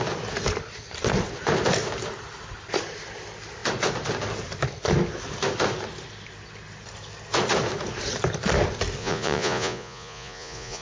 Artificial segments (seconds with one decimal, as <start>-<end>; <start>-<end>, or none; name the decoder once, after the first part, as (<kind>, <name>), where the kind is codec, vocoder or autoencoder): 9.0-10.8 (vocoder, Vocos)